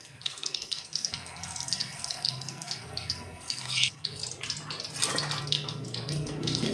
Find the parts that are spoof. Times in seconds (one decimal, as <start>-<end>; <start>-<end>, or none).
0.0-4.2; 5.4-6.7